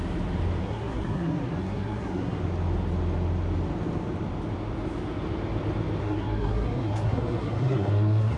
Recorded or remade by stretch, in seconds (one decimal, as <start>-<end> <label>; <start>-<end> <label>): 0.0-0.6 recorded; 0.6-2.4 remade; 2.4-6.0 recorded; 6.0-8.4 remade